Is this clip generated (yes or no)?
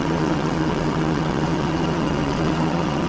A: yes